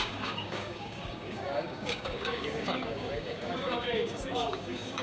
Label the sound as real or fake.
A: fake